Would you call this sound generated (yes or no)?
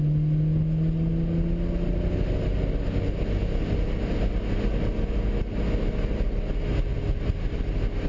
no